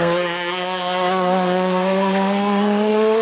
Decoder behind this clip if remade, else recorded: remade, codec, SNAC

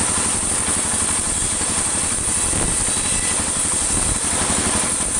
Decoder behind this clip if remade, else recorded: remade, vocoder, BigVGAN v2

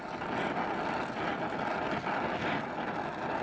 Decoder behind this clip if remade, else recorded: recorded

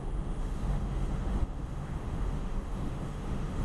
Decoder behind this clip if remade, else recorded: remade, autoencoder, DAC-VAE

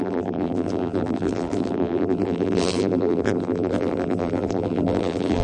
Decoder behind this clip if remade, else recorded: remade, vocoder, BigVGAN v2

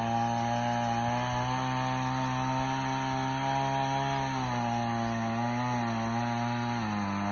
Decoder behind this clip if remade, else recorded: recorded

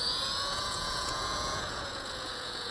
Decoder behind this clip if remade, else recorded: remade, vocoder, Vocos